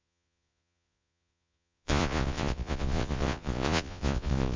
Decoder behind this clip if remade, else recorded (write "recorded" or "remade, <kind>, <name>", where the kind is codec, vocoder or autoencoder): remade, vocoder, Vocos